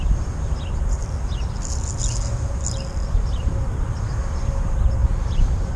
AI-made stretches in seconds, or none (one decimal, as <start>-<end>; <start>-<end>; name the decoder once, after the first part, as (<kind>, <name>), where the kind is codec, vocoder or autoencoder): 0.0-1.0 (vocoder, BigVGAN v2); 3.1-5.8